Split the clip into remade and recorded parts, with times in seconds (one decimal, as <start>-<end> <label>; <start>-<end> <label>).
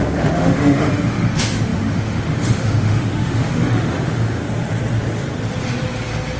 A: 0.0-4.4 remade; 4.4-6.4 recorded